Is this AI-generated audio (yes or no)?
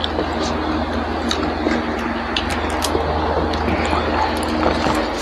no